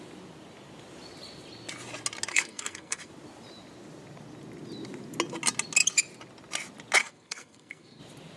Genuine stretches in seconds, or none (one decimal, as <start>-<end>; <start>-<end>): 0.0-2.3; 3.1-7.0; 8.0-8.4